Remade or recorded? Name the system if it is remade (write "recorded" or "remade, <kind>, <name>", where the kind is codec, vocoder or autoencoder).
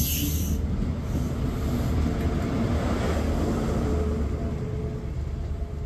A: recorded